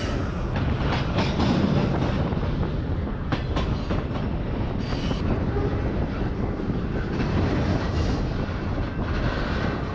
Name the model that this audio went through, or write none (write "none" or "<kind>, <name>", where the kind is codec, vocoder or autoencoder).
none